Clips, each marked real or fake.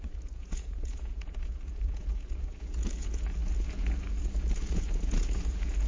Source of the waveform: fake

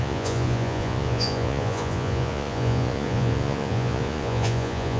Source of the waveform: fake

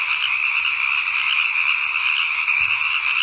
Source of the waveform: real